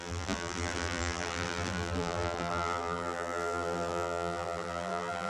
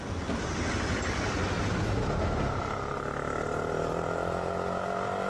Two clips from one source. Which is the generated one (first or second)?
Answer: first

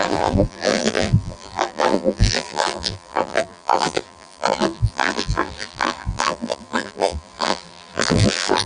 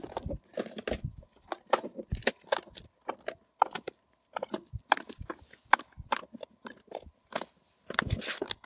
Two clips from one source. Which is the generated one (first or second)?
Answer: first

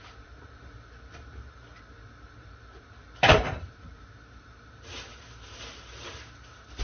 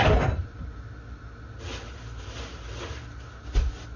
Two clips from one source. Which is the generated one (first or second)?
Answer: first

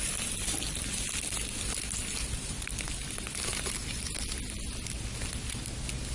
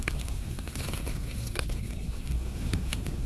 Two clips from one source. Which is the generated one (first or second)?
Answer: second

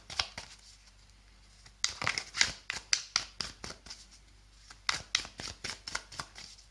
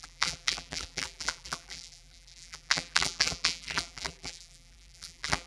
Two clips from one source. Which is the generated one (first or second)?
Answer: second